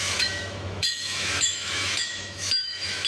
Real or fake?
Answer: fake